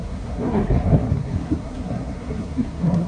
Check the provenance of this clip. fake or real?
fake